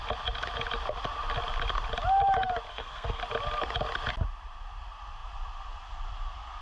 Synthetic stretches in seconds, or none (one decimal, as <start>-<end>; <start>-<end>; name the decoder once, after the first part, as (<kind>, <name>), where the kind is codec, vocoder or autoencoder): 2.7-3.2 (codec, SNAC)